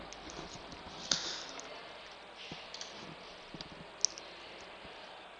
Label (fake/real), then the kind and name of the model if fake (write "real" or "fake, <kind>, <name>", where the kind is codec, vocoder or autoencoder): real